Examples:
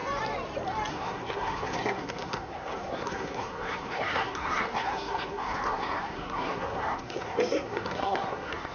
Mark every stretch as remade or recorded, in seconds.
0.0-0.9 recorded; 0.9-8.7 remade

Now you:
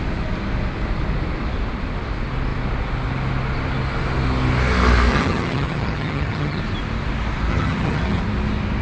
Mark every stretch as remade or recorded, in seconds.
0.0-5.1 recorded; 5.1-6.6 remade; 6.6-7.5 recorded; 7.5-8.2 remade; 8.2-8.8 recorded

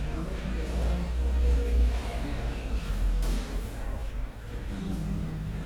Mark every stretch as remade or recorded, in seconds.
0.0-5.7 remade

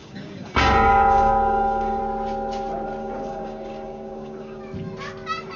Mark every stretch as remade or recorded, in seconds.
0.0-2.0 remade; 2.0-3.0 recorded; 3.0-4.6 remade; 4.6-5.6 recorded

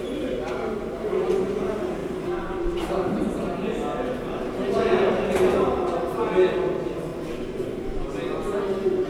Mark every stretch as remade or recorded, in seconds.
0.0-9.1 recorded